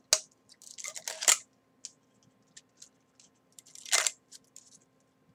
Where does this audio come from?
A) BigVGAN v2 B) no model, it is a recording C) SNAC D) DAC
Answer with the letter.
B